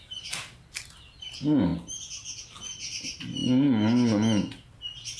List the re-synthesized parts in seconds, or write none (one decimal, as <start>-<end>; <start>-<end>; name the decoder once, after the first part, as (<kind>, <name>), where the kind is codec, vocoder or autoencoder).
none